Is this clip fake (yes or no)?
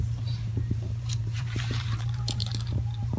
yes